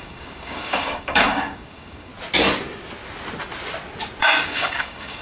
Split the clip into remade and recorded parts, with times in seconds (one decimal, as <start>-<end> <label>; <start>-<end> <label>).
0.0-2.1 remade; 2.1-4.2 recorded; 4.2-5.2 remade